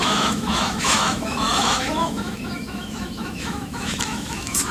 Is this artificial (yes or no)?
yes